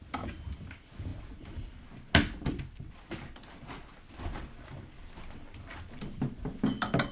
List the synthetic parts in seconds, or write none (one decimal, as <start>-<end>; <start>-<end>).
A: none